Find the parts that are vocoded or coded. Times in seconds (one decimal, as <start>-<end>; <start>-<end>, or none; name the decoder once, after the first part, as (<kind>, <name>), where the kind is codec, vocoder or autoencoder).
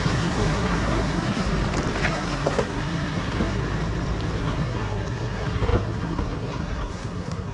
0.0-1.5 (codec, SNAC); 2.1-3.6; 4.4-7.5